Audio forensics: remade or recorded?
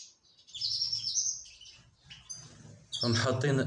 recorded